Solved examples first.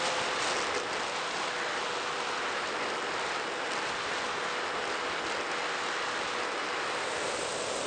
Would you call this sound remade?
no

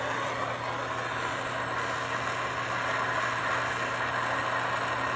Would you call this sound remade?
no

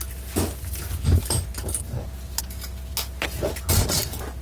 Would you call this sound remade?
no